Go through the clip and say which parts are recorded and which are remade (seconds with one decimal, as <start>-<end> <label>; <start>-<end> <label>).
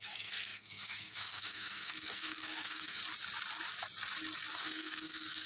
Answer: 0.0-3.0 remade; 3.0-4.6 recorded; 4.6-5.5 remade